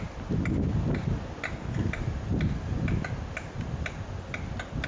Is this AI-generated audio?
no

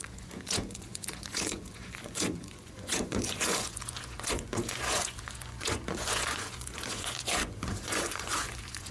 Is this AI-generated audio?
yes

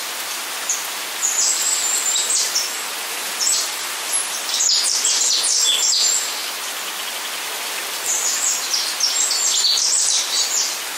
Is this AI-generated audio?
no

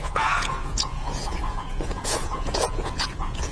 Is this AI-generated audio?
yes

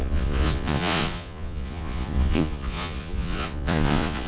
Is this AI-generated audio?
yes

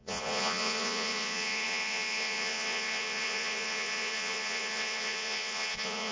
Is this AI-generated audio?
yes